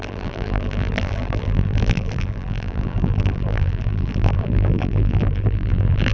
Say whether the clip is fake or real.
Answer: fake